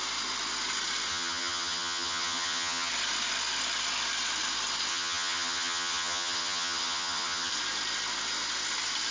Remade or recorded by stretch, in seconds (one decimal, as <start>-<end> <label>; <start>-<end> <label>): 0.0-1.1 recorded; 1.1-2.9 remade; 2.9-4.9 recorded; 4.9-7.5 remade; 7.5-9.1 recorded